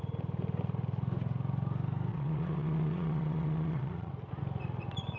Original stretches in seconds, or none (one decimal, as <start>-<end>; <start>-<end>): 0.0-2.1; 4.1-5.2